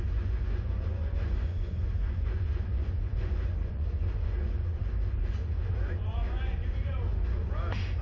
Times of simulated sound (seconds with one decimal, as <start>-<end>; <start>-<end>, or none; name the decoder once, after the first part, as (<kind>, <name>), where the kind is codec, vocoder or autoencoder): 0.0-8.0 (vocoder, Vocos)